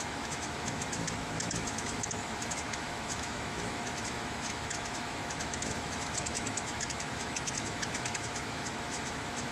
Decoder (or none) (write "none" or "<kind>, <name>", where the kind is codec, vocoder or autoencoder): autoencoder, DAC-VAE